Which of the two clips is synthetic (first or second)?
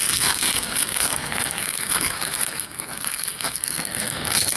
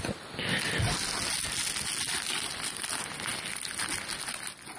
first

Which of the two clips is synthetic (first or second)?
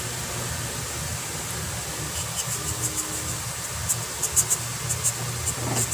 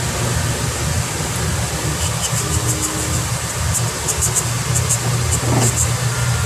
second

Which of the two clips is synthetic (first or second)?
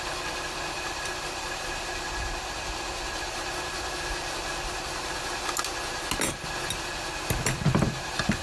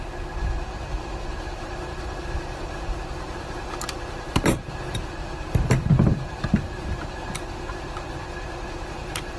second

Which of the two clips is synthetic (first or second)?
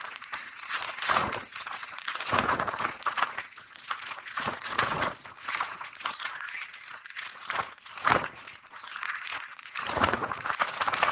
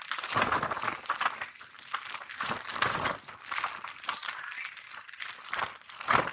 first